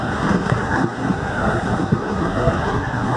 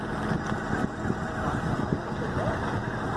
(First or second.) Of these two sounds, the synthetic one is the first